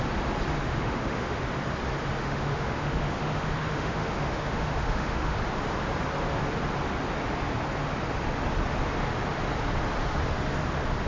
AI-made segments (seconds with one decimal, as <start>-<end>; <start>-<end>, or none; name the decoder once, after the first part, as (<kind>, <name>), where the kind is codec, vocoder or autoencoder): 0.7-1.4 (autoencoder, DAC-VAE); 2.2-5.4